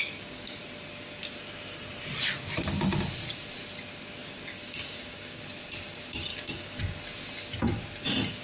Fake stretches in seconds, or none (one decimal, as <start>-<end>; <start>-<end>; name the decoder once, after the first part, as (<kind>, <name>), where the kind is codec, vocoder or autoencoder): 0.0-0.6 (codec, DAC); 4.5-5.4; 6.3-6.8